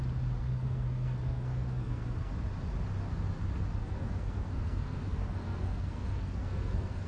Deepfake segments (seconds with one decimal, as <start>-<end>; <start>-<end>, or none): 0.4-2.3; 3.8-7.1